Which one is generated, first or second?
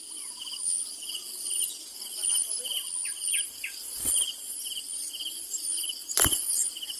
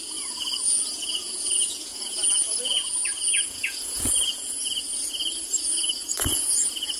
second